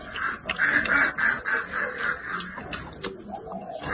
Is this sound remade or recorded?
recorded